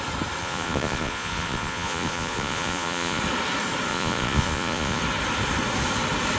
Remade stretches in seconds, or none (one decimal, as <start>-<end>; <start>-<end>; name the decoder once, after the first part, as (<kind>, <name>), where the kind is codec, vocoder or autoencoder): 0.4-3.2 (vocoder, Vocos); 3.9-5.0